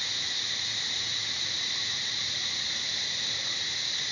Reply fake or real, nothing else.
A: real